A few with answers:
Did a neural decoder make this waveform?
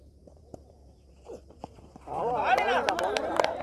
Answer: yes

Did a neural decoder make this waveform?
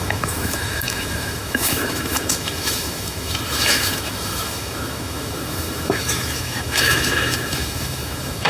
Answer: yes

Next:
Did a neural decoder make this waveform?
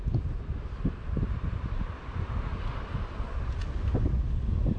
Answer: no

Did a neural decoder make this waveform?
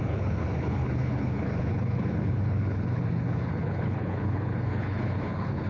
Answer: yes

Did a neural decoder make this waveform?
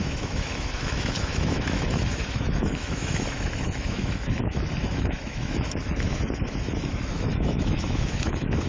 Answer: yes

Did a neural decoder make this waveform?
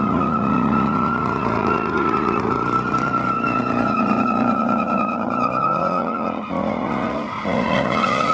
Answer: yes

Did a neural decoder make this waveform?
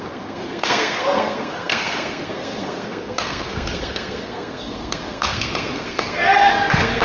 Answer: yes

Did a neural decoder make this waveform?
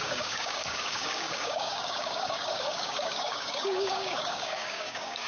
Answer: yes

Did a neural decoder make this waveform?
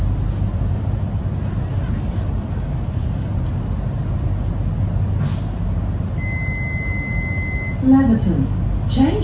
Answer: no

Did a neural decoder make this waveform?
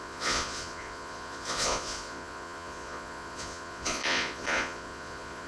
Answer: yes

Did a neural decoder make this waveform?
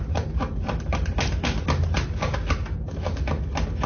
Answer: no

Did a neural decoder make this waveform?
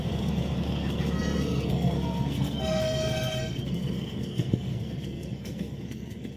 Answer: yes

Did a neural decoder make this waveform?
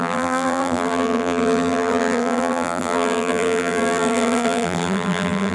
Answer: yes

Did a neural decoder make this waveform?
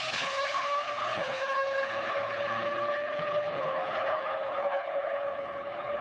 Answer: yes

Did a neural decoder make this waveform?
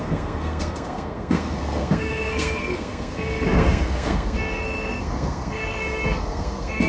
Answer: yes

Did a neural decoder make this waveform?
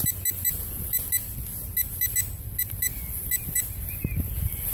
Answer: no